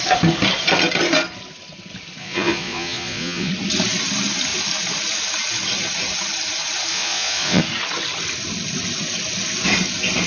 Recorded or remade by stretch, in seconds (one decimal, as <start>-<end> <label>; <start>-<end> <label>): 0.0-2.2 recorded; 2.2-3.5 remade; 3.5-6.9 recorded; 6.9-7.6 remade; 7.6-10.3 recorded